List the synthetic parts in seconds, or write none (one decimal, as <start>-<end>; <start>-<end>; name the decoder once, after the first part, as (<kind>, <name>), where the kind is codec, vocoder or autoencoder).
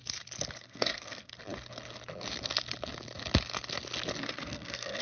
0.6-1.3 (codec, SNAC); 4.2-5.0